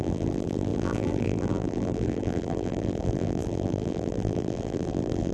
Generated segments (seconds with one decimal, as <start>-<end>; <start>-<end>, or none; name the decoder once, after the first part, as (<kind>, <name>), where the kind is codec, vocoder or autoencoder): 0.0-5.3 (vocoder, BigVGAN v2)